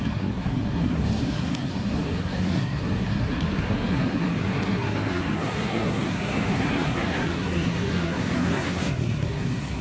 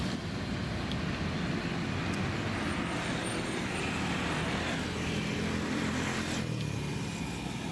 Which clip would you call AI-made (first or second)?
first